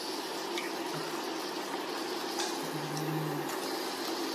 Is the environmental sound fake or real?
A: real